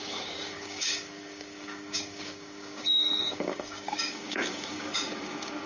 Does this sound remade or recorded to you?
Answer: remade